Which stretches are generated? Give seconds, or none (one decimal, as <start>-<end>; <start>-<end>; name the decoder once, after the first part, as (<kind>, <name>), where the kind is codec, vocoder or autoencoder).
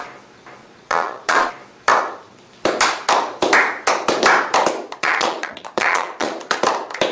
0.6-1.5 (vocoder, Vocos); 4.9-6.4